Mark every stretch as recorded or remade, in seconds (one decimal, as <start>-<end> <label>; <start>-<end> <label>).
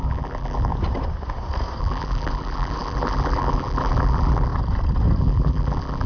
0.0-0.7 remade; 0.7-1.8 recorded; 1.8-4.5 remade; 4.5-5.2 recorded; 5.2-6.1 remade